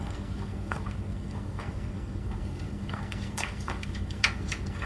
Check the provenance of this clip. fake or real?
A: fake